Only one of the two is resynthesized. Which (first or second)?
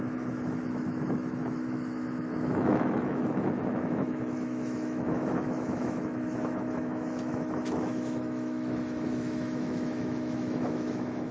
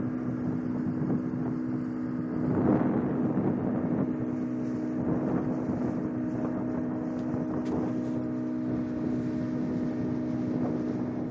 first